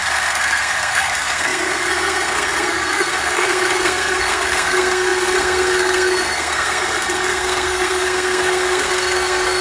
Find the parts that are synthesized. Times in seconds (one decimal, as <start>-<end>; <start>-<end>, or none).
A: 0.0-9.6